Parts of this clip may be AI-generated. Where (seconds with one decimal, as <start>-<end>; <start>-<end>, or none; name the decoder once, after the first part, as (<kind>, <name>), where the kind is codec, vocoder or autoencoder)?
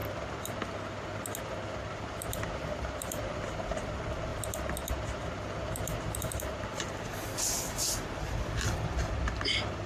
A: 1.4-4.3 (vocoder, BigVGAN v2); 4.9-9.9